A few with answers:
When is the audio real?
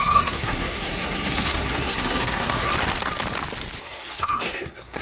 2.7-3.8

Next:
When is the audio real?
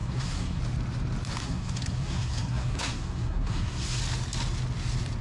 0.6-1.4; 4.0-5.2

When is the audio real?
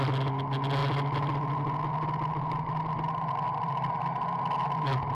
0.0-5.1